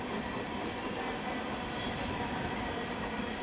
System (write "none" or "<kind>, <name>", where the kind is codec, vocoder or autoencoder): none